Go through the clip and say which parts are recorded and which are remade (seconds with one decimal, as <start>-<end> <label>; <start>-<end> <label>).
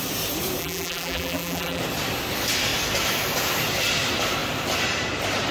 0.0-0.6 recorded; 0.6-1.8 remade; 1.8-5.5 recorded